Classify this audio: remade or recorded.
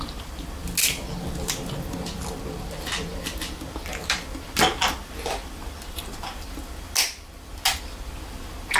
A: recorded